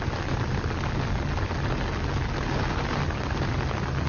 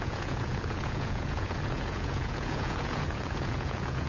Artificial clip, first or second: second